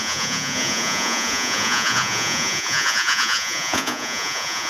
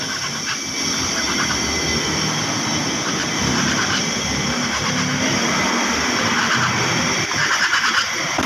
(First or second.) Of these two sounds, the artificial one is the first